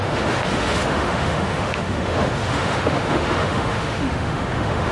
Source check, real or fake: fake